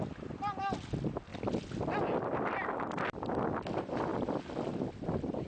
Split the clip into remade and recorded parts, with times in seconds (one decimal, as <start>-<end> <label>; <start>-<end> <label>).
0.0-5.5 recorded